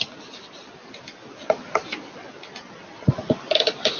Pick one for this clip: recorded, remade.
recorded